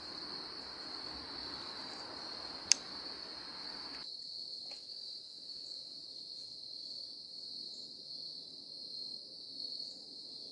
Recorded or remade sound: recorded